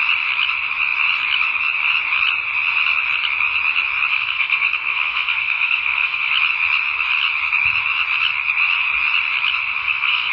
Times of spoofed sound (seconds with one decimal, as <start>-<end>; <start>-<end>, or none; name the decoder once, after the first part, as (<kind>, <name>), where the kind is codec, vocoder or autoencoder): 4.1-6.3 (codec, SNAC); 9.8-10.3